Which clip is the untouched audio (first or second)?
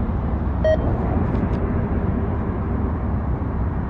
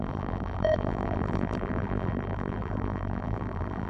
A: first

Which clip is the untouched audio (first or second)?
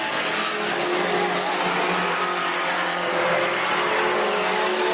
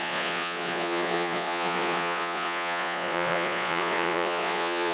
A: first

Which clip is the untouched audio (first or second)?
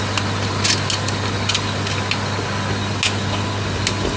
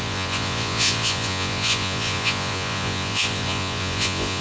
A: first